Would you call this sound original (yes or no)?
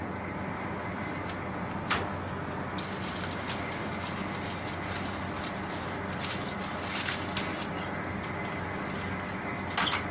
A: yes